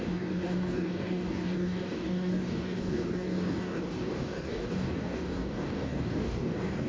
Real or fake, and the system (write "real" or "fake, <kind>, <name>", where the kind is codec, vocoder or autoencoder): fake, codec, DAC